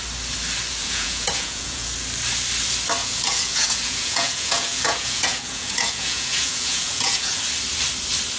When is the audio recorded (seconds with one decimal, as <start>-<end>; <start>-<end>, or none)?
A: 0.0-0.8; 1.9-3.0; 7.4-8.4